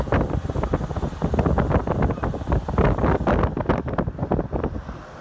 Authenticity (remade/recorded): recorded